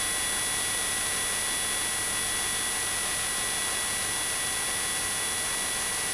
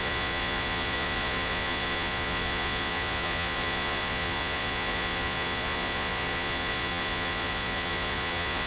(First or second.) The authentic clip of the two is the first